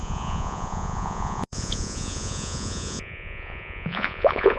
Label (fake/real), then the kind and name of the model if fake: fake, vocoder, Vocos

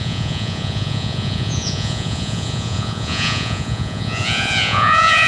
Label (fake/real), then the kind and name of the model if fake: fake, vocoder, Vocos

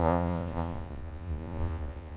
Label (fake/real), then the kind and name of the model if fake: fake, vocoder, Vocos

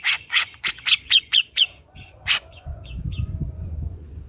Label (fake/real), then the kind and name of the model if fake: fake, vocoder, Vocos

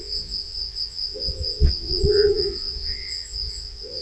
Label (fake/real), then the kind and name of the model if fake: fake, vocoder, Vocos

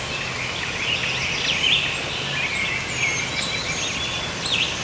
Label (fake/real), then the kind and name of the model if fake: real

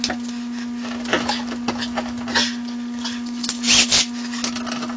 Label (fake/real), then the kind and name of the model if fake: real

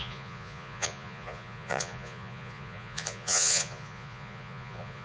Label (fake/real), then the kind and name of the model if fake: fake, vocoder, Vocos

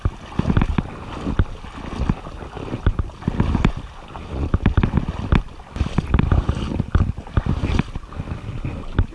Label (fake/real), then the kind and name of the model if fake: real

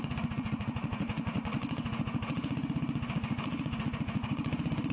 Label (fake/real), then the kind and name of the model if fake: fake, vocoder, Vocos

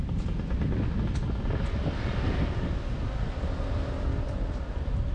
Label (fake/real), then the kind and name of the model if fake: real